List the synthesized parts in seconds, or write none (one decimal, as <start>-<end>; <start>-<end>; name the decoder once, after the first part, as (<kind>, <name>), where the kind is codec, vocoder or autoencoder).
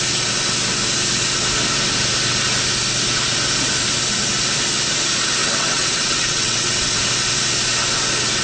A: 5.4-7.0 (vocoder, WaveNeXt)